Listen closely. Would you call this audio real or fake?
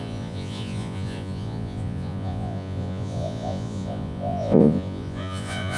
fake